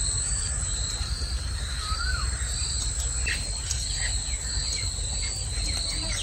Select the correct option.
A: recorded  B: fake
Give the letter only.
A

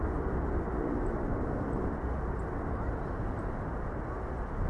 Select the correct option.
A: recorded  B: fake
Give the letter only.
A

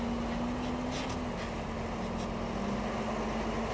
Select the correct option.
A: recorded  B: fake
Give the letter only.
A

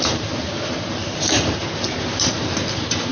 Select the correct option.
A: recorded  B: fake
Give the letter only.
B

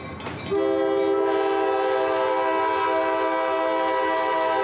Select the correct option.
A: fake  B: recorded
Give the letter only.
B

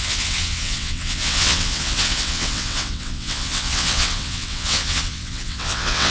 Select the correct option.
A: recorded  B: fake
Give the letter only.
B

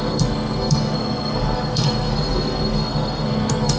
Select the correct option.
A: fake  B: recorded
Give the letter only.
A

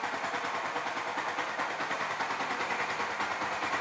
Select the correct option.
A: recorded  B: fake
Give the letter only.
A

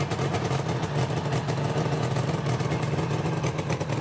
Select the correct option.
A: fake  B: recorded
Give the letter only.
B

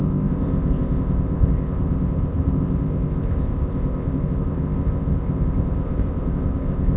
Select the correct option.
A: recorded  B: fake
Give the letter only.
B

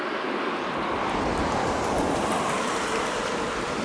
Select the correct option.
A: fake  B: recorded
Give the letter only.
B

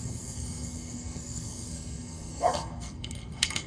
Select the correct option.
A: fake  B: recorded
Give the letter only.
A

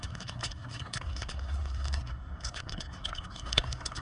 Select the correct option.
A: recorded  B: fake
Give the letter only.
B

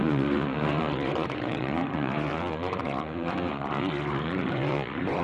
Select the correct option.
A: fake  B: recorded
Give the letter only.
A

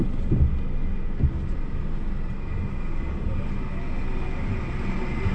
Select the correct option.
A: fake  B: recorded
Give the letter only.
B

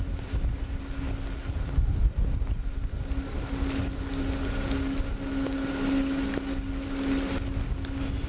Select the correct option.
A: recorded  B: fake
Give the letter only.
A